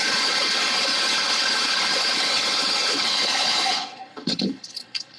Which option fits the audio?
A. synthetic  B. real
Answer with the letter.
A